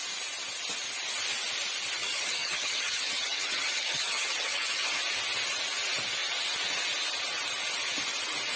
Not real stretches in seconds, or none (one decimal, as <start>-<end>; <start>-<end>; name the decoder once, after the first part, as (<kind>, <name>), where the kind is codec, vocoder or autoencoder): 2.0-5.0 (vocoder, HiFi-GAN)